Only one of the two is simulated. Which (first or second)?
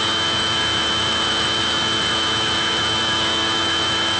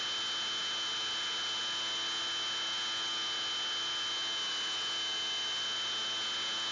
first